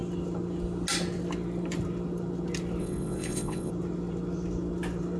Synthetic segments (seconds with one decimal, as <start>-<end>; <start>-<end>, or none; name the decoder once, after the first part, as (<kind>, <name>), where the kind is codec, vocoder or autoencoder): 2.8-3.7 (vocoder, WaveNeXt)